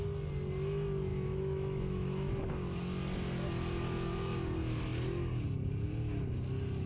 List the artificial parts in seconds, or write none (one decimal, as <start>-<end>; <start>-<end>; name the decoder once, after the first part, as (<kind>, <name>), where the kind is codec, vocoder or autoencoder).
1.1-2.3 (autoencoder, DAC-VAE)